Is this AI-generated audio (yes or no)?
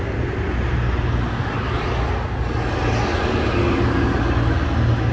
no